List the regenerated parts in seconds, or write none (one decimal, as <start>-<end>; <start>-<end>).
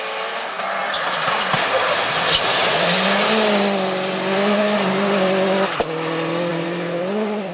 6.5-7.0